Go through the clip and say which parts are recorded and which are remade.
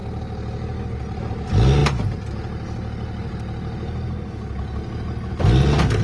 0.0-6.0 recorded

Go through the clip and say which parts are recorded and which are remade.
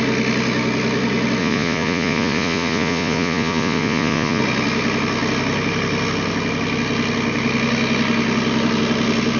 0.0-1.4 recorded; 1.4-4.4 remade; 4.4-9.4 recorded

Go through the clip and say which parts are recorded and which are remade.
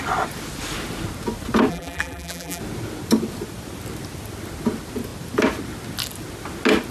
0.0-1.7 recorded; 1.7-2.6 remade; 2.6-6.9 recorded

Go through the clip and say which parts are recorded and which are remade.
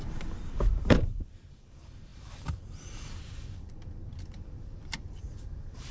0.0-5.9 remade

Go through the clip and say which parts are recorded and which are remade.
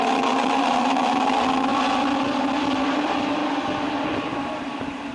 0.0-1.7 remade; 1.7-2.4 recorded; 2.4-3.4 remade; 3.4-4.0 recorded; 4.0-5.1 remade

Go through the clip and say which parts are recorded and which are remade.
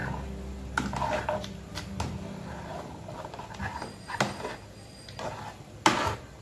0.0-6.4 recorded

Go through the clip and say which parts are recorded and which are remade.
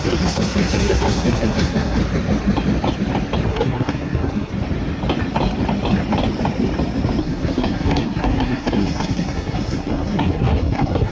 0.0-2.0 remade; 2.0-3.5 recorded; 3.5-4.5 remade; 4.5-7.2 recorded; 7.2-11.1 remade